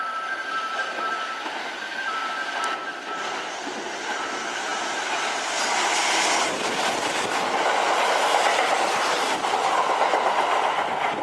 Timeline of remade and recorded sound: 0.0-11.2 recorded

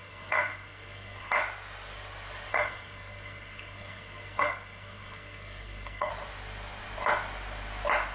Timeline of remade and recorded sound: 0.0-1.4 remade; 1.4-2.5 recorded; 2.5-6.1 remade; 6.1-8.1 recorded

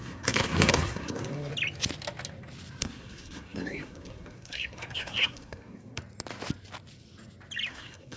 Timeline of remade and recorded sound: 0.0-1.5 remade; 1.5-2.8 recorded; 2.8-6.0 remade; 6.0-7.7 recorded; 7.7-8.2 remade

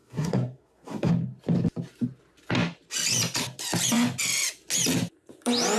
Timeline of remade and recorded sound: 0.0-1.1 remade; 1.1-5.8 recorded

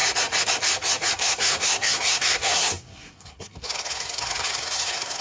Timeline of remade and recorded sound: 0.0-1.1 recorded; 1.1-5.2 remade

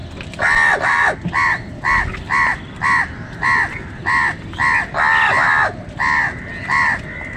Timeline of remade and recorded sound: 0.0-7.4 recorded

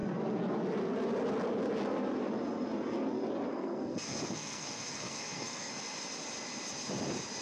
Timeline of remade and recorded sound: 0.0-3.5 recorded; 3.5-5.7 remade; 5.7-7.4 recorded